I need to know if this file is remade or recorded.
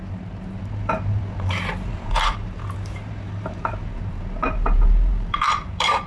remade